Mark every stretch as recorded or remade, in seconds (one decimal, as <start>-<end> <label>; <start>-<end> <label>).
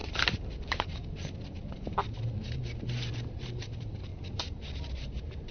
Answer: 0.0-4.1 remade; 4.1-5.0 recorded; 5.0-5.5 remade